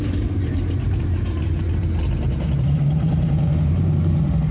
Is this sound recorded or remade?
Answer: remade